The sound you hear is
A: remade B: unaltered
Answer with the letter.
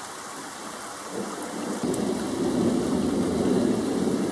B